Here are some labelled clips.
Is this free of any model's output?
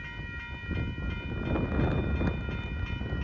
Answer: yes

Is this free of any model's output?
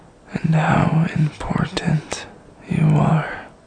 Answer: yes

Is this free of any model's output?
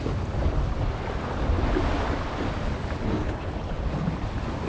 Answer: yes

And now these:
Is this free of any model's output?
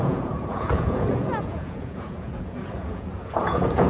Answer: no